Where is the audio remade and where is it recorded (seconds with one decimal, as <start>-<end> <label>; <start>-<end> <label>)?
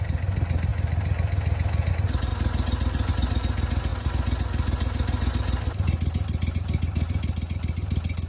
0.0-8.3 recorded